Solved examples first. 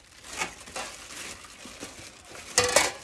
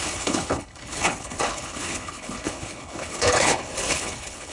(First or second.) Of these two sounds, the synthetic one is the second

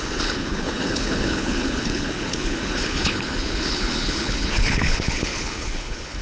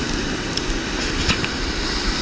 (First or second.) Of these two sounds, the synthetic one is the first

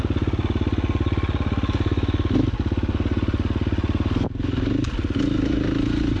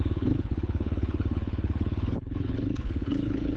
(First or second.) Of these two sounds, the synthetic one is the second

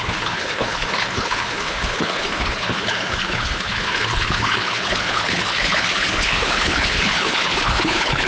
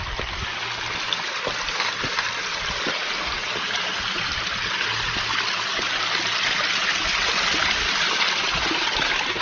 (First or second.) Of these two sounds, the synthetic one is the first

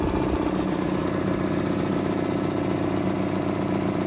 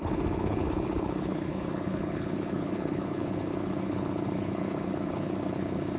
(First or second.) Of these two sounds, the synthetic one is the second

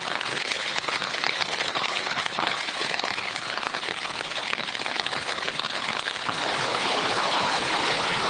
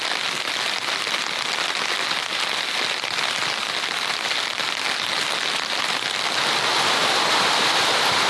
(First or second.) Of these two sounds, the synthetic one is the first